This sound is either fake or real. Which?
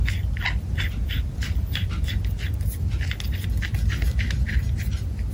real